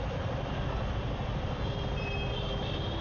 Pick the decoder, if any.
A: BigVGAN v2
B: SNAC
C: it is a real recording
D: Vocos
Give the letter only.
C